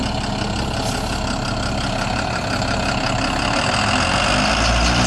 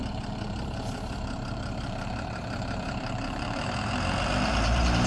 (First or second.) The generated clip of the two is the second